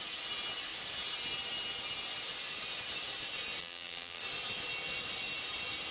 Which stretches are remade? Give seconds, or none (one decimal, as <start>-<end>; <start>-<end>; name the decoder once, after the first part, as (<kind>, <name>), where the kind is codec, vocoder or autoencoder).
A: 3.6-4.2 (vocoder, BigVGAN v2)